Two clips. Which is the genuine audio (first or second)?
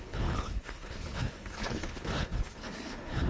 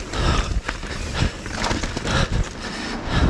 second